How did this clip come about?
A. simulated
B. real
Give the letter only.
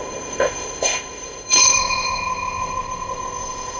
A